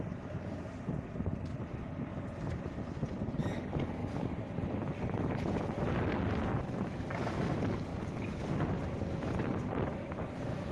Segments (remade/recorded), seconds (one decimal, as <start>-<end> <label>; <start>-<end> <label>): 0.0-10.7 recorded